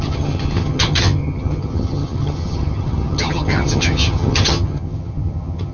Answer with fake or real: fake